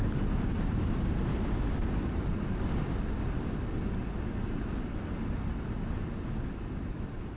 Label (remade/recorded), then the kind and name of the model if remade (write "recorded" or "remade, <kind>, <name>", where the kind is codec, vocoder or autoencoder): recorded